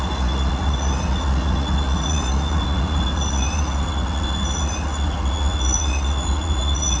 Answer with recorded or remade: remade